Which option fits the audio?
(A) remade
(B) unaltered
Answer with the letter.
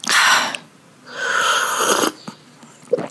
B